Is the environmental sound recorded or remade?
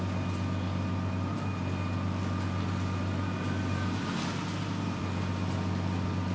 recorded